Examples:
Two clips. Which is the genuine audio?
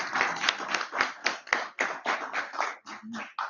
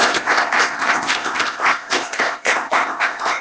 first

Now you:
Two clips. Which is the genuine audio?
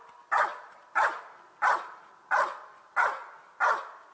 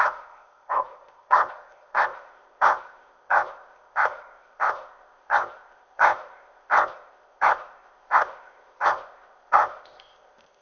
first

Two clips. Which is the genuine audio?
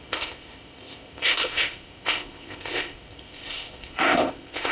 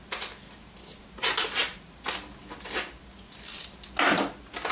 second